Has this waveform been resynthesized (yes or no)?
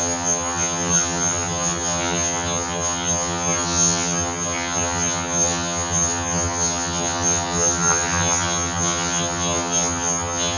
yes